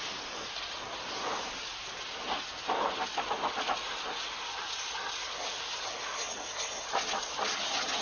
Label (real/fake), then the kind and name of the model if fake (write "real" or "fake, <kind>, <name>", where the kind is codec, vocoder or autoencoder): real